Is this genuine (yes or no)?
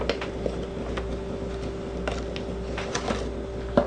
yes